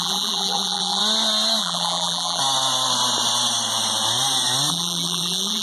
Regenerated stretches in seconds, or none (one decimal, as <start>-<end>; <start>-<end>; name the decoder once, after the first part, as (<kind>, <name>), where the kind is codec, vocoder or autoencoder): 0.0-1.0 (vocoder, BigVGAN v2); 1.6-2.4; 4.7-5.6